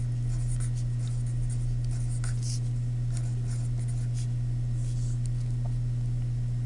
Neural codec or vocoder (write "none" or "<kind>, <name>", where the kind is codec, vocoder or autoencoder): none